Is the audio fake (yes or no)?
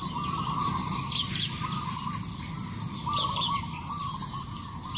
no